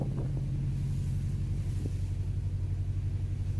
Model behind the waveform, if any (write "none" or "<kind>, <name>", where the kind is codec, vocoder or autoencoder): none